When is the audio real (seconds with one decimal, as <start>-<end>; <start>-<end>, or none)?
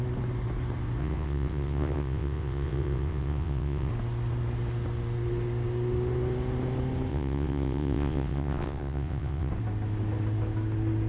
0.0-1.0; 3.9-7.1; 9.5-11.1